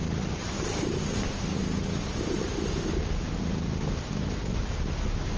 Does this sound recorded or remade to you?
recorded